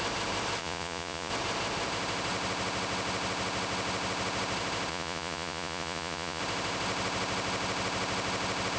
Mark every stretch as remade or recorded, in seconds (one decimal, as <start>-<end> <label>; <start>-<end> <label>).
0.0-0.6 recorded; 0.6-1.3 remade; 1.3-4.9 recorded; 4.9-6.4 remade; 6.4-8.8 recorded